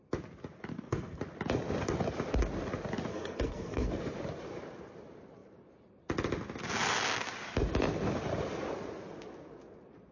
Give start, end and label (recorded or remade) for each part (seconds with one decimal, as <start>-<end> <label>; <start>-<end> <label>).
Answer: 0.0-0.7 recorded; 0.7-1.2 remade; 1.2-3.1 recorded; 3.1-3.9 remade; 3.9-10.1 recorded